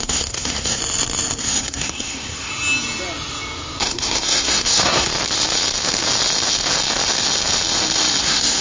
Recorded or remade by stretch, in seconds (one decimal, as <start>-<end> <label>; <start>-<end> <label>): 0.0-0.8 remade; 0.8-1.4 recorded; 1.4-2.5 remade; 2.5-3.8 recorded; 3.8-5.1 remade; 5.1-8.2 recorded; 8.2-8.6 remade